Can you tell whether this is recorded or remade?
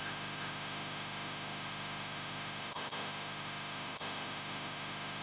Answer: remade